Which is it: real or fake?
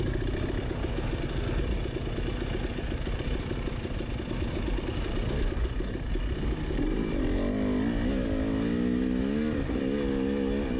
real